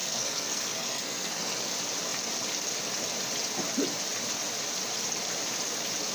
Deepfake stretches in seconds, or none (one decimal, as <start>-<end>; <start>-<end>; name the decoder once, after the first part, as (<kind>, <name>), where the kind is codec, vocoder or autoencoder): 0.0-1.7 (codec, SNAC)